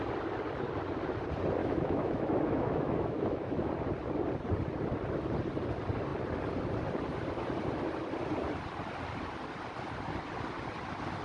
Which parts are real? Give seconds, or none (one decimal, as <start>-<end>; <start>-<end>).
0.0-1.6; 3.7-11.2